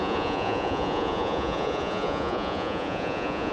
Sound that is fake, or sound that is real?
fake